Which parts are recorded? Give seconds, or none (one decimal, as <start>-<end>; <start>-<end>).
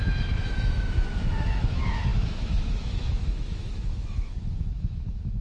none